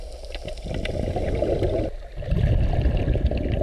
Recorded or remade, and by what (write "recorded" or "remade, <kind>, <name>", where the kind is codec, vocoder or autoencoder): recorded